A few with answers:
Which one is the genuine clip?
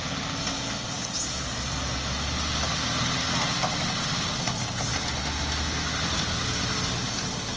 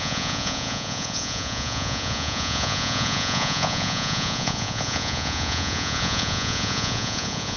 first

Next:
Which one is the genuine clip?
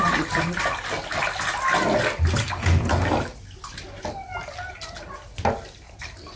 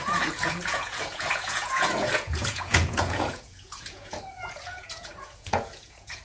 first